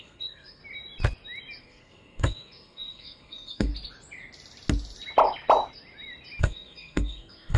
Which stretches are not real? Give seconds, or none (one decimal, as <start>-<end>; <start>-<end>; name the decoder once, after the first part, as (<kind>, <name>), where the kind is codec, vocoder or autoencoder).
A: 0.0-0.6 (codec, SNAC); 1.6-3.7; 6.4-7.6

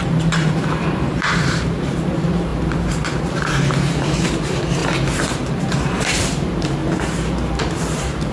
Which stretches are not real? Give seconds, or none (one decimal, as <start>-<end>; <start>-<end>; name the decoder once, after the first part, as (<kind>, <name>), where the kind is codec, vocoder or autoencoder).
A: 0.0-4.8 (vocoder, BigVGAN v2); 5.5-6.8; 7.6-8.3

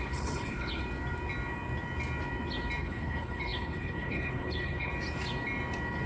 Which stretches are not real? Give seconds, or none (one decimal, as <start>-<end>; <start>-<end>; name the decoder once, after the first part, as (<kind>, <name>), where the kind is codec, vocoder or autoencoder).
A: 0.0-0.8 (codec, HILCodec); 2.8-4.9

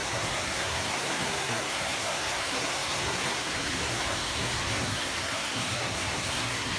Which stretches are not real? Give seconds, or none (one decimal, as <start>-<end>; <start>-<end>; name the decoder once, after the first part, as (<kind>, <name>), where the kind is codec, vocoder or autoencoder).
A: 0.0-6.8 (codec, SNAC)

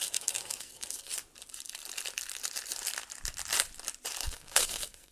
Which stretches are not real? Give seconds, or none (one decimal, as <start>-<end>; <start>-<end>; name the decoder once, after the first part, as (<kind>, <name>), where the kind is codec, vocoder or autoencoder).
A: 0.0-1.1 (codec, SNAC); 4.2-5.1

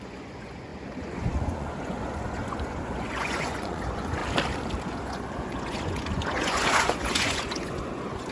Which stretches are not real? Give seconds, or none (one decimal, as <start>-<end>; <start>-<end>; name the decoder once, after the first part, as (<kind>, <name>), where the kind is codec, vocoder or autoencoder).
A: 0.0-4.2 (vocoder, Vocos); 4.8-8.3

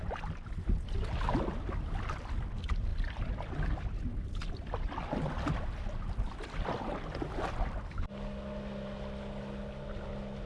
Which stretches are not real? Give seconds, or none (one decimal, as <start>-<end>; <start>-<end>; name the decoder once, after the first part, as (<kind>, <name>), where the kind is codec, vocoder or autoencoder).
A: none

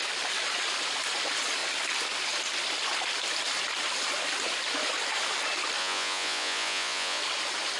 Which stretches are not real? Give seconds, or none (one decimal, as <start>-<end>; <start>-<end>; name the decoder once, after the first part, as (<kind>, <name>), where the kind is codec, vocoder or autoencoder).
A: 5.8-7.2 (vocoder, Vocos)